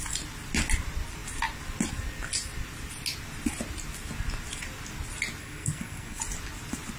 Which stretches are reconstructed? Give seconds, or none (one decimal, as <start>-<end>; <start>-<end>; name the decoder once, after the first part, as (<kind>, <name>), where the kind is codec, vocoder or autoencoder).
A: 5.4-6.2 (codec, SNAC)